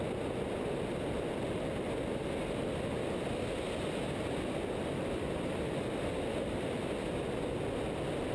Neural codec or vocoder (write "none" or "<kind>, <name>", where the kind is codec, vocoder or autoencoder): none